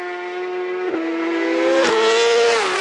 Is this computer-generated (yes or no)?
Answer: no